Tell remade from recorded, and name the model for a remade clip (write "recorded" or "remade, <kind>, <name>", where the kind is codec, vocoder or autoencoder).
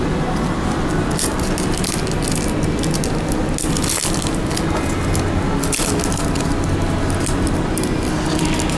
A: recorded